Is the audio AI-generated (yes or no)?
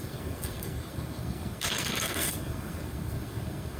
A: yes